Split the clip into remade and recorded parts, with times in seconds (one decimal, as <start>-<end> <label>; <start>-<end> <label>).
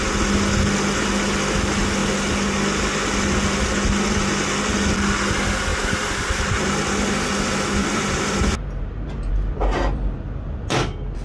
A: 0.0-5.7 recorded; 5.7-6.7 remade; 6.7-7.8 recorded; 7.8-9.3 remade; 9.3-11.2 recorded